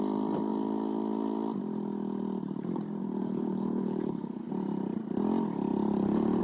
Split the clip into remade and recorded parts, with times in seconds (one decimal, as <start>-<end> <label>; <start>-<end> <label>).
0.0-3.0 recorded; 3.0-4.5 remade; 4.5-6.4 recorded